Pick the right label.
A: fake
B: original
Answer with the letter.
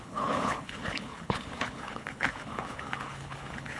A